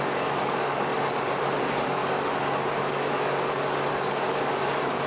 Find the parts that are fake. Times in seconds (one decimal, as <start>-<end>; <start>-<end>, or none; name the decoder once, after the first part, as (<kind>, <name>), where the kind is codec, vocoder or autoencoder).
0.0-0.9 (codec, DAC); 1.6-2.0; 2.9-5.1